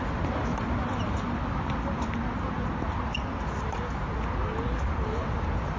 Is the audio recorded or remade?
recorded